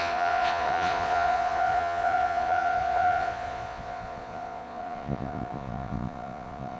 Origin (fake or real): fake